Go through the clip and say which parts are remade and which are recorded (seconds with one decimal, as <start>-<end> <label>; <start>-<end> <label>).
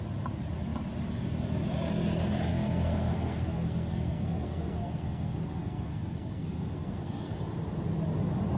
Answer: 0.0-2.5 recorded; 2.5-7.4 remade; 7.4-8.6 recorded